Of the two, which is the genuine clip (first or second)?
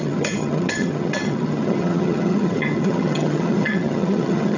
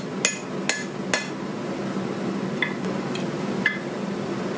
second